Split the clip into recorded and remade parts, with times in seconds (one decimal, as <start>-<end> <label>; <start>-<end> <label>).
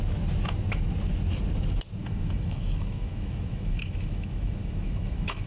0.0-2.0 recorded; 2.0-5.5 remade